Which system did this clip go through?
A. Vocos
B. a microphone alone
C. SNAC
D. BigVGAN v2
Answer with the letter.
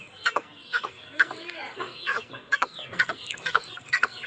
C